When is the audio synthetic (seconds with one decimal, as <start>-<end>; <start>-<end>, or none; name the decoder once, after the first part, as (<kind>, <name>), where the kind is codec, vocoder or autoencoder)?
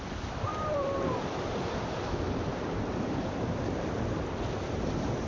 0.5-2.5 (vocoder, BigVGAN v2)